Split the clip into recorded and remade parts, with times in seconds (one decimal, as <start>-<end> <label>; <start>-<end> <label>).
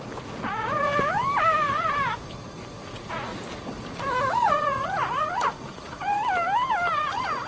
0.0-0.9 remade; 0.9-2.8 recorded; 2.8-3.3 remade; 3.3-4.3 recorded; 4.3-6.2 remade; 6.2-7.1 recorded; 7.1-7.5 remade